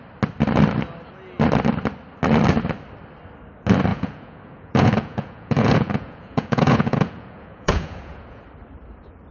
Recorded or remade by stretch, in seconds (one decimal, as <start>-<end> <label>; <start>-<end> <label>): 0.0-3.9 recorded; 3.9-8.4 remade; 8.4-9.3 recorded